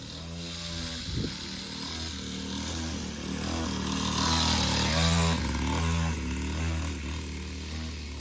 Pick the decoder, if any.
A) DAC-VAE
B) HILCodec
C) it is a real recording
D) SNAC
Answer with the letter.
C